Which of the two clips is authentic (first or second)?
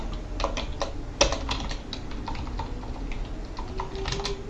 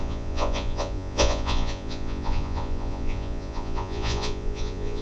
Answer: first